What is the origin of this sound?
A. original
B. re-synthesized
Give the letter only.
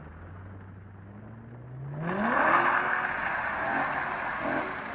A